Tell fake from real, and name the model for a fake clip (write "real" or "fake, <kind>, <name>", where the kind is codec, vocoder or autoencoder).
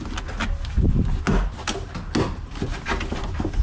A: real